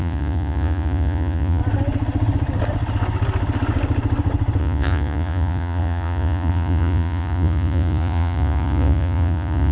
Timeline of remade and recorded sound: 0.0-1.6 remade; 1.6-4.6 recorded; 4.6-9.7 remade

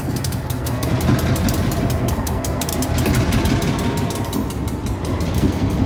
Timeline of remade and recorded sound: 0.0-0.9 remade; 0.9-2.0 recorded; 2.0-2.7 remade; 2.7-5.3 recorded; 5.3-5.9 remade